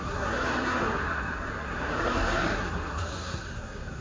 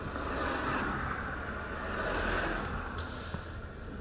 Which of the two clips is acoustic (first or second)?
second